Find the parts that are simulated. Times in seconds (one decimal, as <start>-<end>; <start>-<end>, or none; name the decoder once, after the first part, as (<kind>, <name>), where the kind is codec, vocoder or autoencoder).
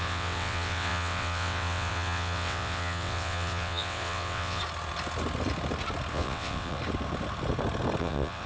0.0-4.6 (vocoder, WaveNeXt); 6.1-6.8; 8.0-8.5